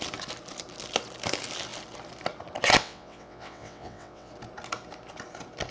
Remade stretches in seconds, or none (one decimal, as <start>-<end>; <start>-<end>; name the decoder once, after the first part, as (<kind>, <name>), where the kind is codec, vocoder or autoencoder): 2.8-4.3 (vocoder, WaveNeXt)